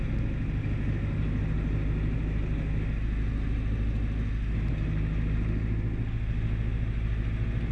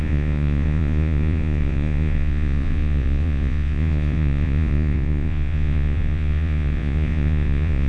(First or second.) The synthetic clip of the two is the second